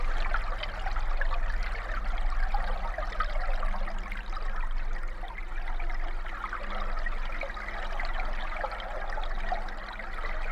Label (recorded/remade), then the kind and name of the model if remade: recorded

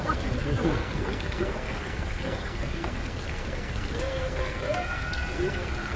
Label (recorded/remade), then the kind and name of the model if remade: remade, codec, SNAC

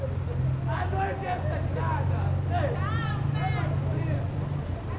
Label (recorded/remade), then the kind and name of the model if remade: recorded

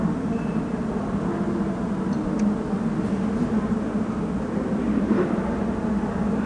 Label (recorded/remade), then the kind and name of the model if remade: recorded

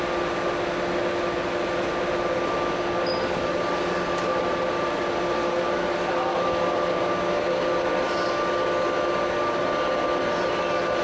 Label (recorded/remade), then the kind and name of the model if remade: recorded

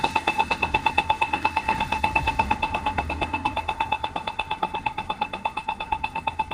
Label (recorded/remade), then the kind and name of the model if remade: remade, codec, SNAC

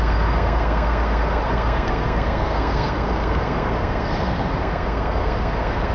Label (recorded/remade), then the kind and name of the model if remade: remade, codec, SNAC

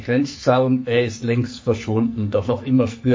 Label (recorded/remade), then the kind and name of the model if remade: remade, codec, SNAC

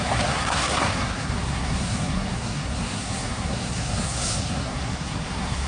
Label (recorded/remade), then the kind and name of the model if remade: remade, codec, SNAC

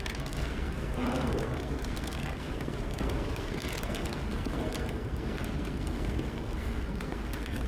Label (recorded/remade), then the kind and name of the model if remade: remade, codec, SNAC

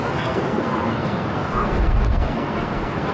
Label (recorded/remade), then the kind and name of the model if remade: remade, codec, SNAC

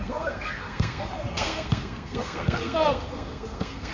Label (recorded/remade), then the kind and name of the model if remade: remade, codec, SNAC